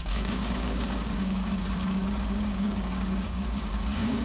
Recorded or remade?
remade